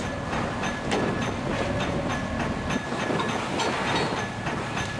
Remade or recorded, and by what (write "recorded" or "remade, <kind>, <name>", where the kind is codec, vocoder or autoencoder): recorded